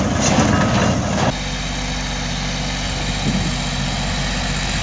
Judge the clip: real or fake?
real